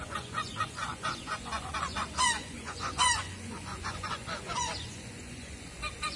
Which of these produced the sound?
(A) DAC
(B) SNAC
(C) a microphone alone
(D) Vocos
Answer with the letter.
D